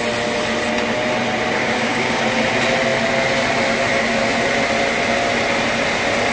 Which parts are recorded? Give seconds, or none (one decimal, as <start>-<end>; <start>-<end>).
0.0-1.6; 2.2-6.3